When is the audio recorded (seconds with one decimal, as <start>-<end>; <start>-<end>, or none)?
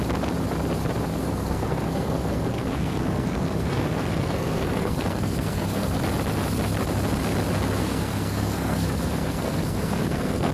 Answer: 0.0-1.2; 6.0-7.8